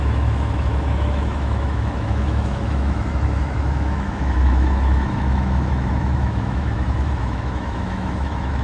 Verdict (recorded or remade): remade